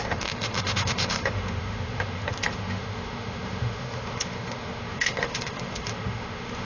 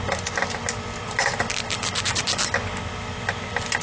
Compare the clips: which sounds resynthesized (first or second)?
first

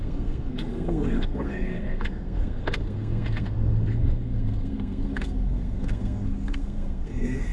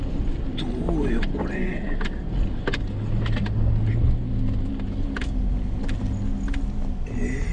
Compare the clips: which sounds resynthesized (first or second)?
first